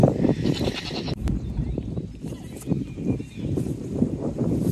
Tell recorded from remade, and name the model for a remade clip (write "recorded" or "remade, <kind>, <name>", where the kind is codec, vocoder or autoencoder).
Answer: remade, vocoder, BigVGAN v2